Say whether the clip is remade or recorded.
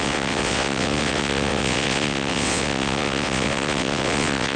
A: remade